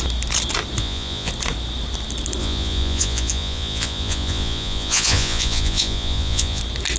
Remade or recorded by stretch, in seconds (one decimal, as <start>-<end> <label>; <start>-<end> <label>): 0.0-0.8 recorded; 0.8-1.3 remade; 1.3-2.4 recorded; 2.4-6.6 remade; 6.6-7.0 recorded